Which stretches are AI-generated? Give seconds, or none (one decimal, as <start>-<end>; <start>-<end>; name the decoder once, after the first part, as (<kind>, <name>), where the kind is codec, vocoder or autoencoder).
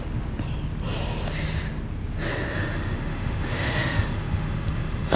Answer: 2.5-5.2 (autoencoder, DAC-VAE)